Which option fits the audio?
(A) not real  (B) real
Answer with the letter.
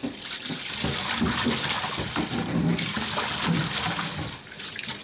B